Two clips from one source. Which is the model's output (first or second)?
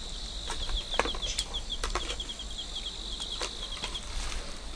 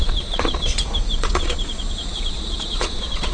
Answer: second